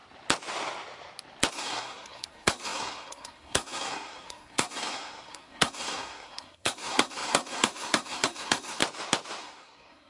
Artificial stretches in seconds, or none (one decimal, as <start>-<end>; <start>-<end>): 1.5-8.8; 9.4-10.1